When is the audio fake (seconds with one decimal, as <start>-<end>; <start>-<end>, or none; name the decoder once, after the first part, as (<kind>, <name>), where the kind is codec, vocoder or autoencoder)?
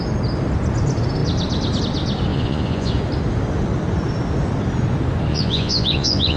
2.3-2.9 (vocoder, Vocos); 5.3-6.4